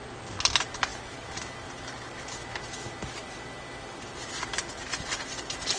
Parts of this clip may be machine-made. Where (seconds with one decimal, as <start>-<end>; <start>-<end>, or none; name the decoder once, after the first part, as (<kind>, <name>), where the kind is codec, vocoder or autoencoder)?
none